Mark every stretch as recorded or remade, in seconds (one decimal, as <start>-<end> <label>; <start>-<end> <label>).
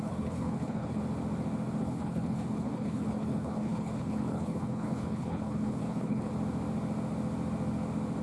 0.0-1.0 remade; 1.0-1.8 recorded; 1.8-6.3 remade; 6.3-8.2 recorded